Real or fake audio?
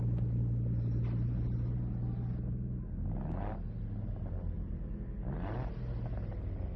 real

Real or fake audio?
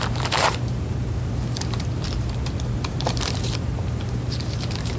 fake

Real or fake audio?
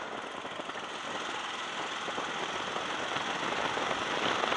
real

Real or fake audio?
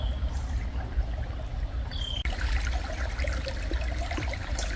fake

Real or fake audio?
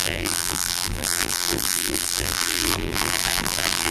fake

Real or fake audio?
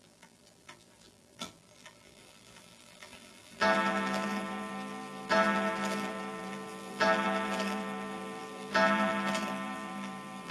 fake